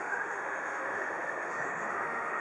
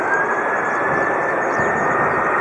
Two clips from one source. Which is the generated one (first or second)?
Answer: first